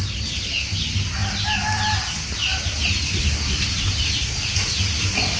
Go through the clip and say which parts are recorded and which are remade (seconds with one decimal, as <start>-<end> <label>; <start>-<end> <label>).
0.0-5.4 recorded